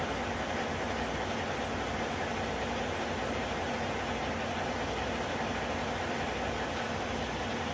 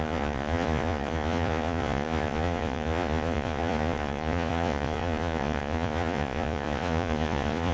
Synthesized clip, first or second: second